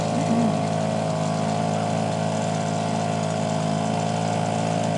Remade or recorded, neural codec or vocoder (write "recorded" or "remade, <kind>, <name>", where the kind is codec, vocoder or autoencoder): recorded